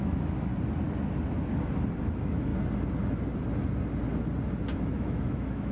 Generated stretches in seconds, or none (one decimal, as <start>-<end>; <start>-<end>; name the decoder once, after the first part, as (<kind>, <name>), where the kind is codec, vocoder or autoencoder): 0.0-0.5 (autoencoder, DAC-VAE); 2.0-2.5; 4.8-5.7